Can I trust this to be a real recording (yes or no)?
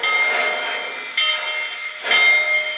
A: yes